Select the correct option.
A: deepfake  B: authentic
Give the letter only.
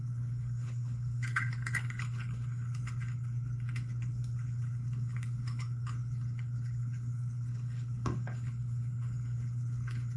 A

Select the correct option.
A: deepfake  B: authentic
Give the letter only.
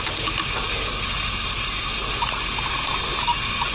B